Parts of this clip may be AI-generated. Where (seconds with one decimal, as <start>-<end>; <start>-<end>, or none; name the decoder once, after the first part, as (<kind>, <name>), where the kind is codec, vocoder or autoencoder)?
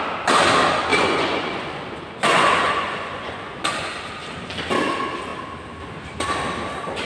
0.9-4.0 (vocoder, Vocos)